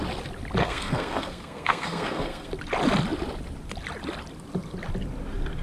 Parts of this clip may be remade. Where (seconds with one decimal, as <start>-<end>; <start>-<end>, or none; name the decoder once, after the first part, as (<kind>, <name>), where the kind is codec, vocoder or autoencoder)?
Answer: 0.6-2.5 (codec, SNAC)